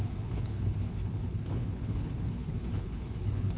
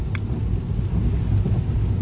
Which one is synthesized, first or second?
first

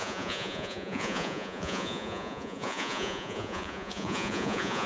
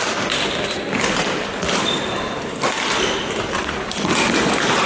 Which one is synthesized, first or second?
first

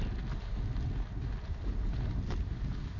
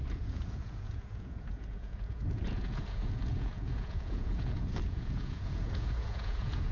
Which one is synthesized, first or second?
second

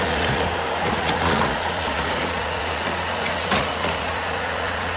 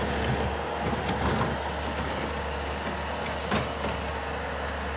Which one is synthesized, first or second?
first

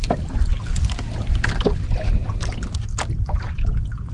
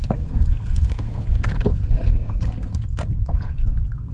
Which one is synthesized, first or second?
second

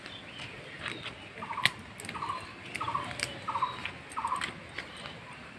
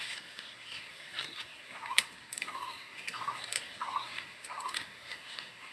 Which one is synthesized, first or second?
second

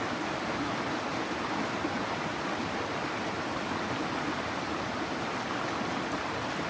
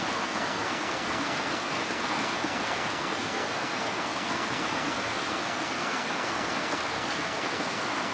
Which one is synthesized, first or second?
second